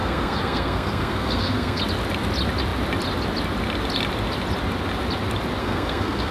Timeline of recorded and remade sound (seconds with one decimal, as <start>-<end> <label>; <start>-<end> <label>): 0.0-1.8 remade; 1.8-5.6 recorded; 5.6-6.3 remade